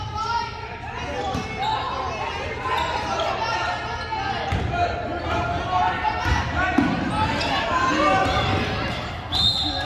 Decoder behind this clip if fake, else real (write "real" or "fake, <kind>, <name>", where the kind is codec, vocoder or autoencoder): real